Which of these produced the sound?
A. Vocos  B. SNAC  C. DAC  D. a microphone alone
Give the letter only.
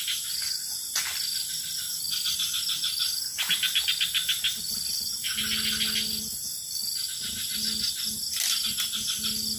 D